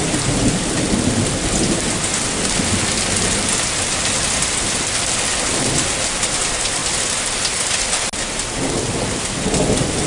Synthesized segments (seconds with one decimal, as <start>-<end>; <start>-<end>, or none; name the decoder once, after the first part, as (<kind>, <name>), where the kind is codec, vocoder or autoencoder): none